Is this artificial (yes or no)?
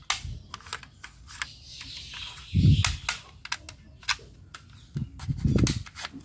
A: no